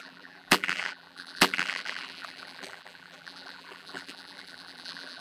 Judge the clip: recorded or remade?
remade